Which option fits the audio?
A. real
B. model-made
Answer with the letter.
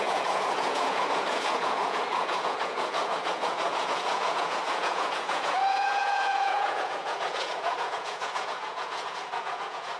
B